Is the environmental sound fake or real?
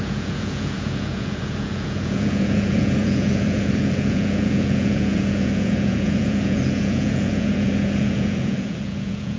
fake